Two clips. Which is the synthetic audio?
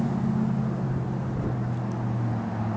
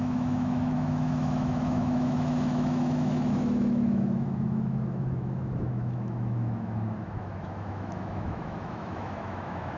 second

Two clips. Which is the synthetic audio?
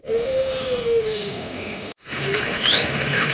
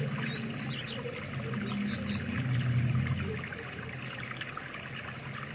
first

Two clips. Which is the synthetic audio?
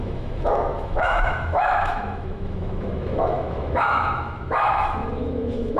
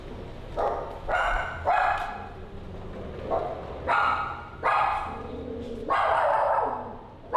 first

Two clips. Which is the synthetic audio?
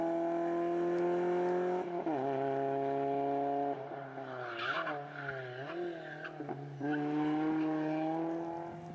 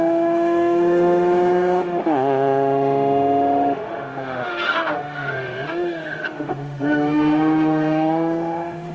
second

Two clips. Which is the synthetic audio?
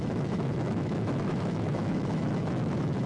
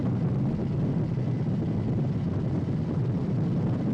first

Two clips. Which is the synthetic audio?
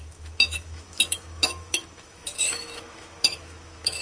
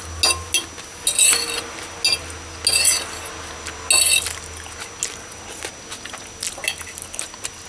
first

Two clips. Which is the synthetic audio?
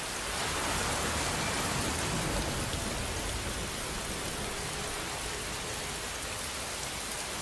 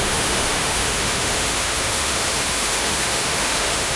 second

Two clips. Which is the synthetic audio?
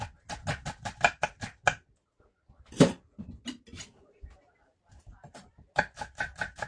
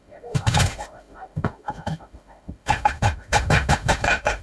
second